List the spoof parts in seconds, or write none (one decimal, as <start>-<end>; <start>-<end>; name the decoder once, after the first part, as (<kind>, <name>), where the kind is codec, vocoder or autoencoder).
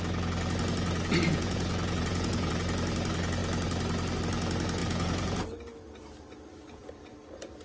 1.3-2.5 (vocoder, Vocos); 4.8-5.4